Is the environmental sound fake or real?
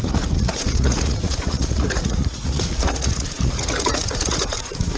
fake